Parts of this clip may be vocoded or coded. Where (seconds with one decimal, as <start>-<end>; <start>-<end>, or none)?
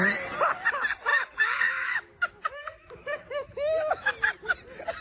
1.1-4.1